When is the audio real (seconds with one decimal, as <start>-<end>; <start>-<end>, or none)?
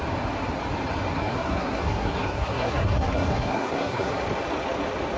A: 0.0-1.1; 4.2-5.2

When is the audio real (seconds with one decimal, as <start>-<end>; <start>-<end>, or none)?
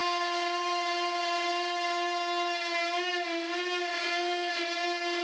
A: 0.0-4.0; 4.5-5.2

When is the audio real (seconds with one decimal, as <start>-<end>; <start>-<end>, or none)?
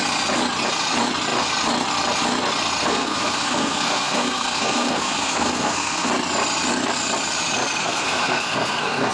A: 0.0-2.9; 6.1-7.8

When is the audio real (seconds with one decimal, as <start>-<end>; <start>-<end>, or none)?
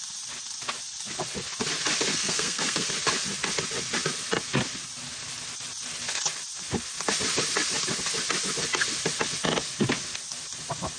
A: 0.0-2.1; 2.9-11.0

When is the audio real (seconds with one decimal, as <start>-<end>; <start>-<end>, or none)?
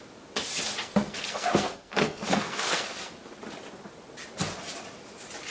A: 0.0-0.8; 3.1-5.5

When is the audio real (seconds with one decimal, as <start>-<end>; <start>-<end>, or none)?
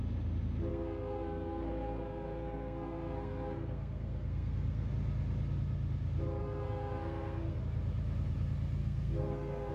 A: 0.0-0.7; 4.9-6.4; 7.6-8.8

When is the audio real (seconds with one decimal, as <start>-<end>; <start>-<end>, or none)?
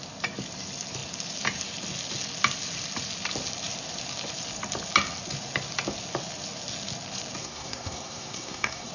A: 0.0-7.4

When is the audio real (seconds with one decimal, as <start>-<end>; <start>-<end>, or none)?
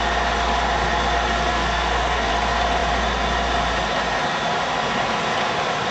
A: 0.0-1.5; 2.3-5.9